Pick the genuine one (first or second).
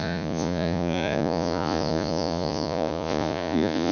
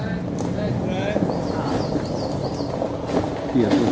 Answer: second